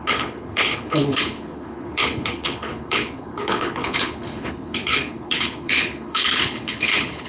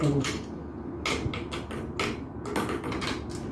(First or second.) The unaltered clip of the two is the second